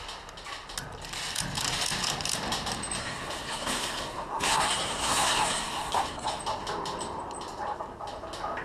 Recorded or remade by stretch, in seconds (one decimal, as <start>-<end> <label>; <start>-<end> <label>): 0.0-3.0 recorded; 3.0-6.4 remade; 6.4-8.6 recorded